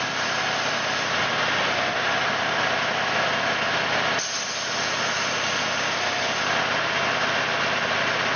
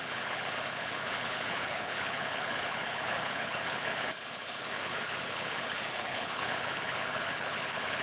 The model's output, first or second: second